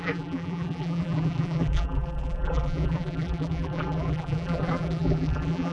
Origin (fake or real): fake